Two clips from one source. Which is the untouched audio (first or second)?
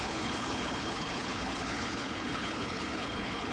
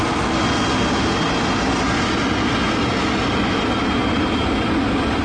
second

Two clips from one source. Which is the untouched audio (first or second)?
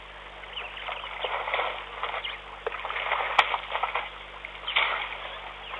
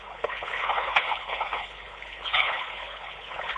first